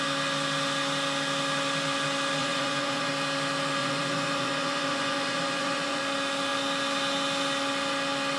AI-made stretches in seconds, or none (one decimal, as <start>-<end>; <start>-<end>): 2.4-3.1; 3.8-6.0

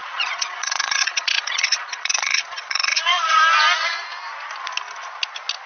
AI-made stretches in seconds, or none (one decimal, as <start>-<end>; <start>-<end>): 0.0-3.4

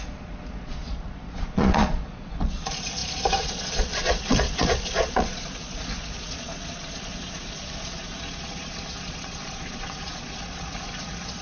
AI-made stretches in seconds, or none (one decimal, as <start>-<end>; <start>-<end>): 0.0-11.4

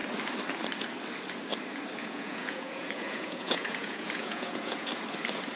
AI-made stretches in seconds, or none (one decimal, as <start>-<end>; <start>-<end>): 2.0-4.9

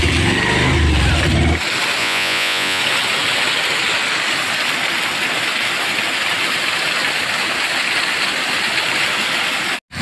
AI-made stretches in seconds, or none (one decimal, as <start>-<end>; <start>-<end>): 2.0-2.8

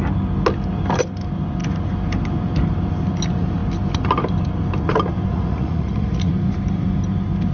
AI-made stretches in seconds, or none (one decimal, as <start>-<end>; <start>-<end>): 5.3-6.3

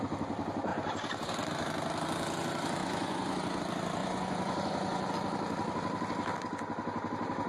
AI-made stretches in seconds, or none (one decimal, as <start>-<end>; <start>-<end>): 2.8-3.6; 4.0-5.1

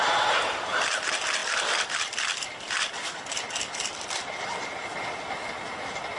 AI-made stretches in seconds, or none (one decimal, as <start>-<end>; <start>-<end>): none